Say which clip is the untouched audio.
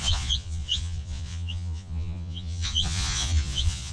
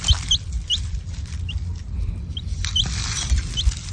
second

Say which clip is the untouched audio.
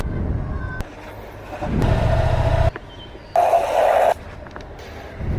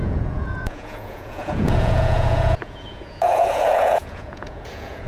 first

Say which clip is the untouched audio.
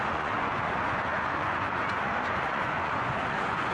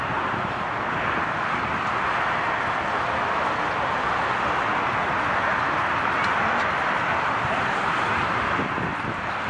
second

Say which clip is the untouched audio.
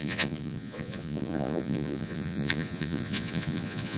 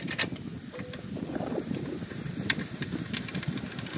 second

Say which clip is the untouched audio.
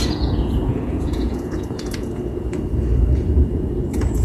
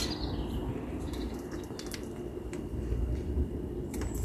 second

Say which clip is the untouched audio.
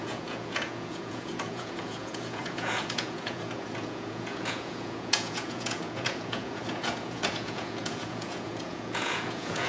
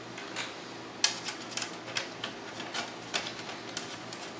second